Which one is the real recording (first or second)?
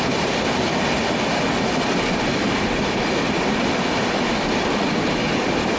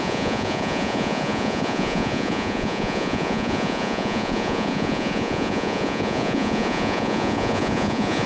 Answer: first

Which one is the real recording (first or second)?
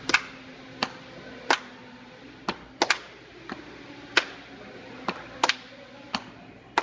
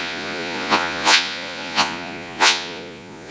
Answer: first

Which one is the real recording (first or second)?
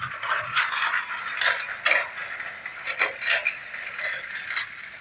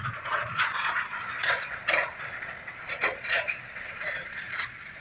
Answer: first